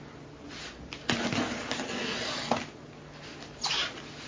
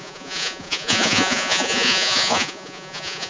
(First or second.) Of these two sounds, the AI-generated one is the second